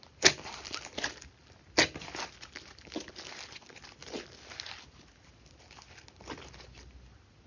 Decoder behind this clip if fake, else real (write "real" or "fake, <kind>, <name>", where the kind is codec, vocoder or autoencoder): real